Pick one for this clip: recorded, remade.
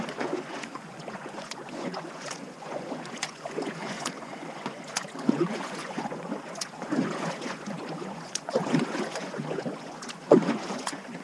remade